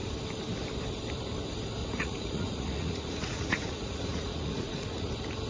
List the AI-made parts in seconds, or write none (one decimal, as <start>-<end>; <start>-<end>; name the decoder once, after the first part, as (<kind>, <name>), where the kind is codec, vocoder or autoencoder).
1.8-5.1 (vocoder, Vocos)